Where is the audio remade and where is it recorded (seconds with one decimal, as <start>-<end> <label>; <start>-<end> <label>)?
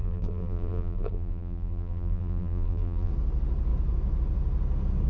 0.0-3.1 remade; 3.1-5.1 recorded